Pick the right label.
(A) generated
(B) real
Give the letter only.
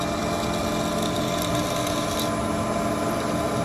B